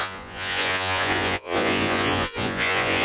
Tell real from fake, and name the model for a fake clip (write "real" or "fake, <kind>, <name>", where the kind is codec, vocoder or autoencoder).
fake, vocoder, Vocos